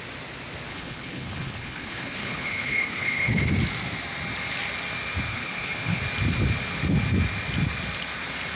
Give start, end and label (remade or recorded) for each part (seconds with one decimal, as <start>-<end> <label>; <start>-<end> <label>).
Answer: 0.0-0.7 recorded; 0.7-3.5 remade; 3.5-5.3 recorded; 5.3-6.0 remade; 6.0-8.6 recorded